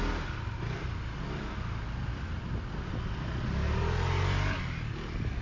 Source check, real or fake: real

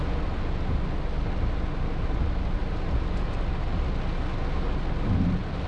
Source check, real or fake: real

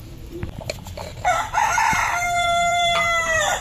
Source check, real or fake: fake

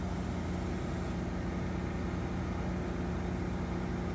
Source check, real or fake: real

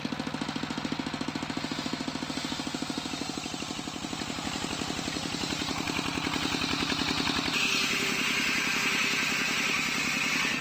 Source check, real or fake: real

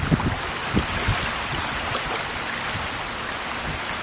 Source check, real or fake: real